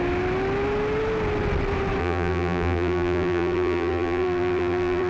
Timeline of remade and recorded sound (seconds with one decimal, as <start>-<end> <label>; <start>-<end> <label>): 0.0-2.0 recorded; 2.0-5.1 remade